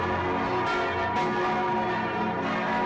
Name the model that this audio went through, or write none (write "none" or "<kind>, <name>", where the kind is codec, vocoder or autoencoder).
none